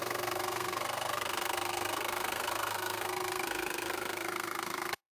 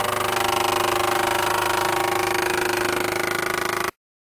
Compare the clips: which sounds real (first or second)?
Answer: second